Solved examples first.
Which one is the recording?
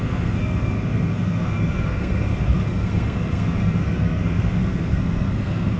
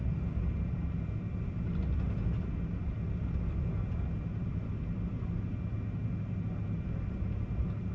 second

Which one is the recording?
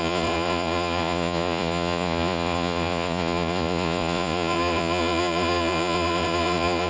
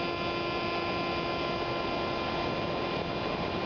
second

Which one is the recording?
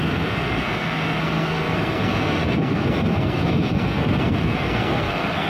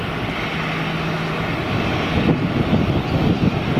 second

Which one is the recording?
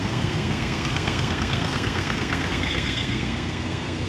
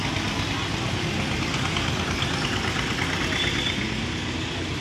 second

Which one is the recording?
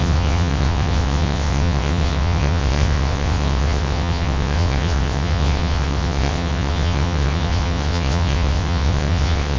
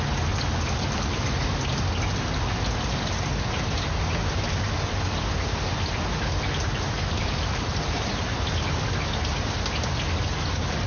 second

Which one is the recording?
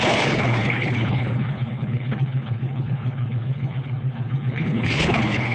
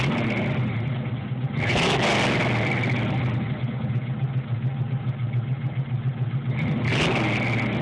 second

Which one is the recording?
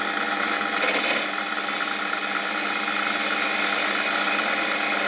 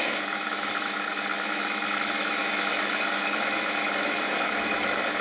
first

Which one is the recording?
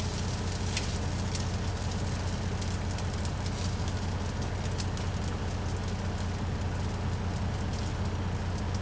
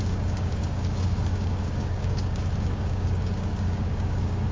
first